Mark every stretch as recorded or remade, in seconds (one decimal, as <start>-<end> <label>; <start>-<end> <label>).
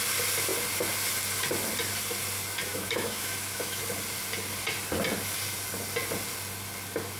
0.0-2.7 recorded; 2.7-3.8 remade; 3.8-7.2 recorded